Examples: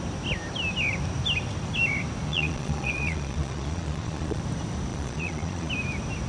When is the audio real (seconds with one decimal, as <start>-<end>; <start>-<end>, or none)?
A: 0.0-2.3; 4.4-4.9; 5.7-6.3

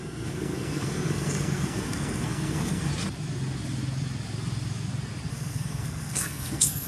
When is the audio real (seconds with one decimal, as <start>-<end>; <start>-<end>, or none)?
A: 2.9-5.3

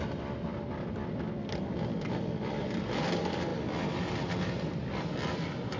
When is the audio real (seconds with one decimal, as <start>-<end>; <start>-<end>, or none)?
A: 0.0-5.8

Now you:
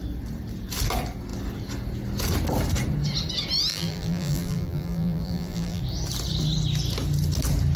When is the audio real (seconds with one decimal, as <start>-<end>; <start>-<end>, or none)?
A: 0.0-3.7; 5.8-7.8

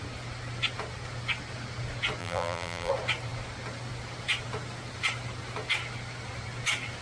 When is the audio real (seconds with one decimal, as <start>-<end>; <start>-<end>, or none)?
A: 0.0-2.2; 2.9-7.0

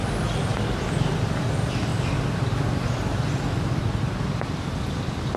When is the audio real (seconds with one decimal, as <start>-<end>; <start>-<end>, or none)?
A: 0.0-5.4